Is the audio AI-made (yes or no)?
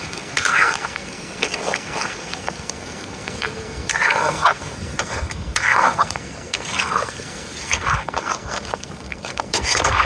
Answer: yes